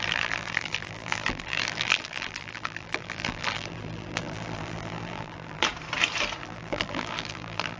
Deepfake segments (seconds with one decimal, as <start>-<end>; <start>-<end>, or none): 0.0-5.6; 6.4-7.8